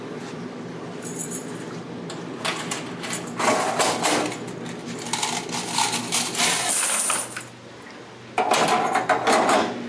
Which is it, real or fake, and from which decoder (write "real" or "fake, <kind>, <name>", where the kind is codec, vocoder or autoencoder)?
real